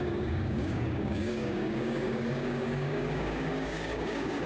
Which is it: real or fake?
fake